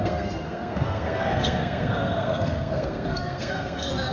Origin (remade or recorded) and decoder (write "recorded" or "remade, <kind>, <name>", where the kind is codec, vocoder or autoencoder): remade, codec, SNAC